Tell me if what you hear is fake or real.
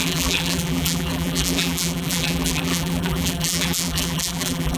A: fake